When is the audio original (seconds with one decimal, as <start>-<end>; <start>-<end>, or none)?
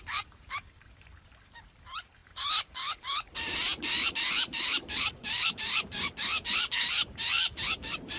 none